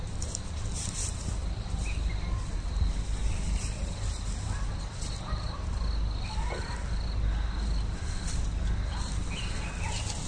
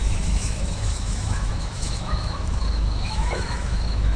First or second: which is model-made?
second